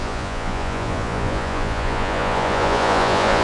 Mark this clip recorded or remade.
remade